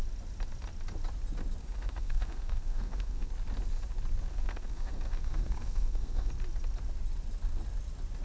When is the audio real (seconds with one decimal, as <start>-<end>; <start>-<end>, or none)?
0.0-1.6; 3.3-4.3; 6.3-8.2